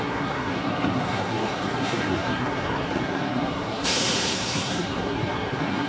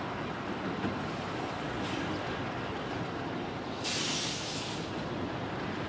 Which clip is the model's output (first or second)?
first